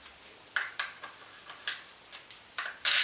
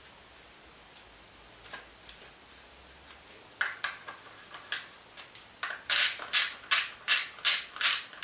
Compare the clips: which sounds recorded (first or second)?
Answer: second